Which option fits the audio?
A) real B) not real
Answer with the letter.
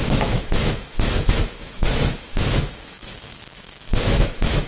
B